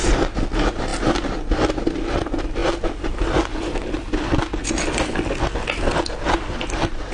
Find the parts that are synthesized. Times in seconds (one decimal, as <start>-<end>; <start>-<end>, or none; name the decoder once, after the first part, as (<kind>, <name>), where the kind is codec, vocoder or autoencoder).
none